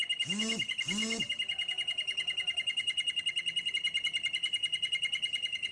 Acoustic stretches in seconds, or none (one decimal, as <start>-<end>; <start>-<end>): 0.0-5.7